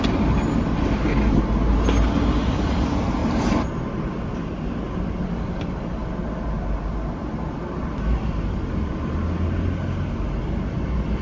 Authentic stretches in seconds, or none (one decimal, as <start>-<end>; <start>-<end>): 0.0-11.2